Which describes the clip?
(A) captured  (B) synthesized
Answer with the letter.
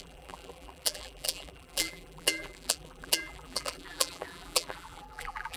B